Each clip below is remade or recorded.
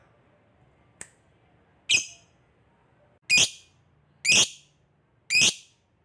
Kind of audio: recorded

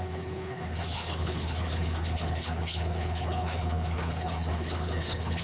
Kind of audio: remade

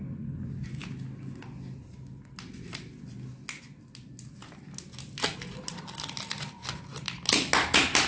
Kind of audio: recorded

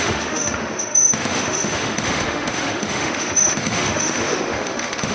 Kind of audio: remade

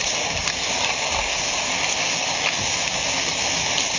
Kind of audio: recorded